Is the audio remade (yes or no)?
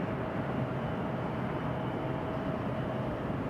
no